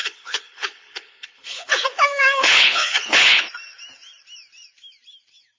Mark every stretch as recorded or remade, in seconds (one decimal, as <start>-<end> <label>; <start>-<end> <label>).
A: 0.0-3.4 remade; 3.4-5.6 recorded